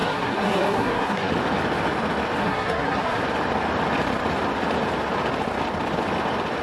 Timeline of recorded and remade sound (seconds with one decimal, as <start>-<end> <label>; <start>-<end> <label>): 0.0-1.3 remade; 1.3-2.4 recorded; 2.4-3.2 remade; 3.2-6.6 recorded